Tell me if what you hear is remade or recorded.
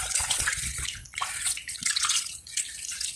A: remade